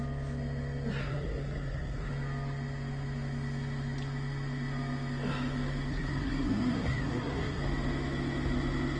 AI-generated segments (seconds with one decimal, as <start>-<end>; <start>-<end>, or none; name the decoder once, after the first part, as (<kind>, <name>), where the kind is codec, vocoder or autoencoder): 1.0-2.1 (codec, SNAC); 5.9-7.6